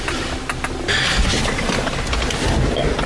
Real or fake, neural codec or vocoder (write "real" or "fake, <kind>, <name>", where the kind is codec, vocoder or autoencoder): real